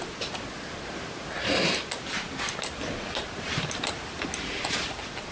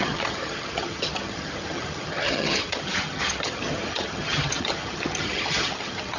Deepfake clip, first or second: second